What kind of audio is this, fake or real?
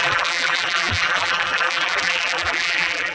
fake